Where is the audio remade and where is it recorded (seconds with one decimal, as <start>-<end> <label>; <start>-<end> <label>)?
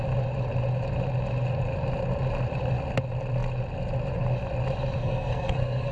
0.0-5.0 recorded; 5.0-5.9 remade